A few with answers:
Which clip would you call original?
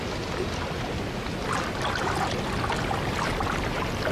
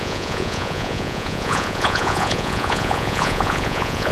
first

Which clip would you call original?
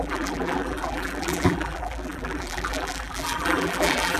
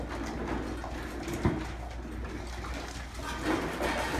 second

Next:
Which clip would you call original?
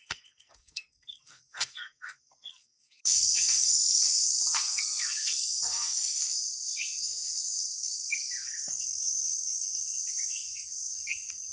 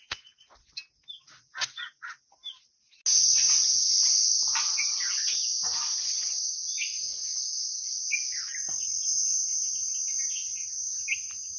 second